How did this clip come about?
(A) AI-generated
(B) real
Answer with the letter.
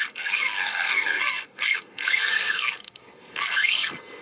A